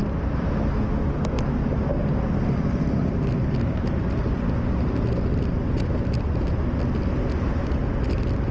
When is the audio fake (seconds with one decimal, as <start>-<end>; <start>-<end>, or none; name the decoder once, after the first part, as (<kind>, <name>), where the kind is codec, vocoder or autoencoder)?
none